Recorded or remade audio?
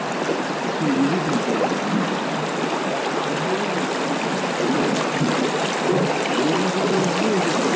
recorded